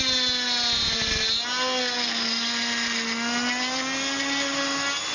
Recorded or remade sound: recorded